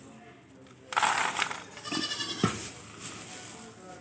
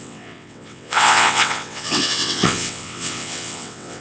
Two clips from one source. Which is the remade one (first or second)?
second